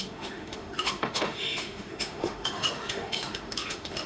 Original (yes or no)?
no